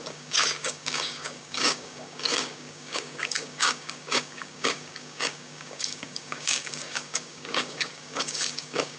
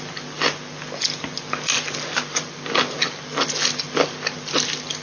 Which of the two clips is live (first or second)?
second